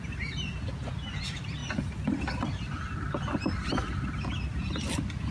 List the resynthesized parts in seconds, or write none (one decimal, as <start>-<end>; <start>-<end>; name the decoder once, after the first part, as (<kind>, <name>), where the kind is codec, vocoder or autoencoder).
none